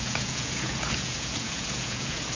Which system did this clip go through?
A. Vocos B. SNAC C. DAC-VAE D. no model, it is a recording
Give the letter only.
A